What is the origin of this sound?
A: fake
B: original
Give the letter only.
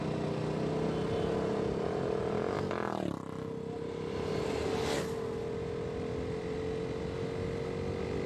B